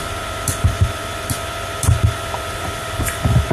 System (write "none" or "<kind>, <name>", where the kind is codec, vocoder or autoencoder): vocoder, BigVGAN v2